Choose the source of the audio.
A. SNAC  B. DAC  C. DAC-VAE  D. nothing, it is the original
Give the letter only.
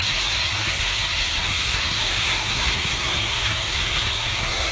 A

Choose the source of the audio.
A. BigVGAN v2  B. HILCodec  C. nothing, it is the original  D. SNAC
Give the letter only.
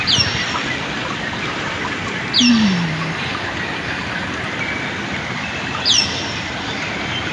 C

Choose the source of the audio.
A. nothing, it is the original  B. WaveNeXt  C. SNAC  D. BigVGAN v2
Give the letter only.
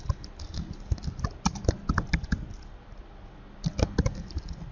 A